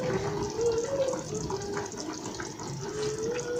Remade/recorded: recorded